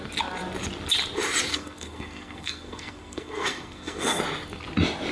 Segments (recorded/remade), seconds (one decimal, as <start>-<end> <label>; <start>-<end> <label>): 0.0-1.5 recorded; 1.5-4.2 remade; 4.2-5.1 recorded